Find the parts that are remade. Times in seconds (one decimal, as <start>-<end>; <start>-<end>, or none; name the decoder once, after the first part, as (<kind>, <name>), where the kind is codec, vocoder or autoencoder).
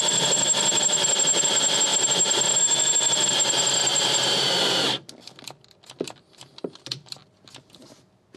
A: 3.9-4.5 (vocoder, BigVGAN v2)